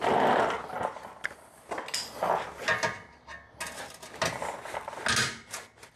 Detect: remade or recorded recorded